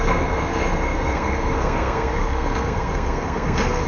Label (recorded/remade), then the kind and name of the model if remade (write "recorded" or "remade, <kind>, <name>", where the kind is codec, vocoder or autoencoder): remade, codec, SNAC